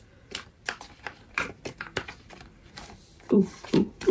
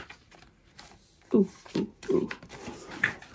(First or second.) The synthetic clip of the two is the first